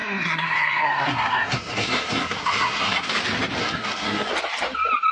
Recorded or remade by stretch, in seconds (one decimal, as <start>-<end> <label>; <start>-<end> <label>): 0.0-3.1 remade; 3.1-3.6 recorded; 3.6-4.3 remade; 4.3-5.1 recorded